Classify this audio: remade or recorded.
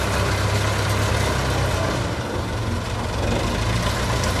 recorded